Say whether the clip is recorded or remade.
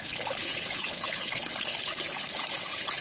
remade